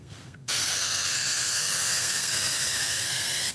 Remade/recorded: remade